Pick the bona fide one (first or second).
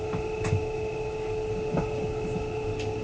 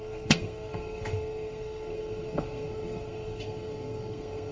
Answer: first